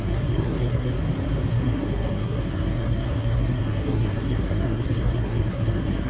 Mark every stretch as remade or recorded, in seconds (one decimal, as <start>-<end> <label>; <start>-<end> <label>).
0.0-0.9 remade; 0.9-1.5 recorded; 1.5-6.1 remade